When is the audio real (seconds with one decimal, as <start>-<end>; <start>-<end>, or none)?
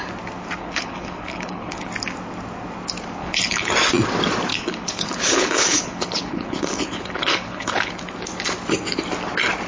0.0-0.6; 1.9-3.2; 3.7-4.5; 7.9-9.7